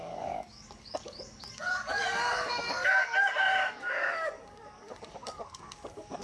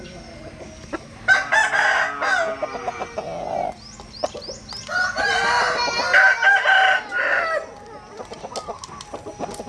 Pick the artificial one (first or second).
first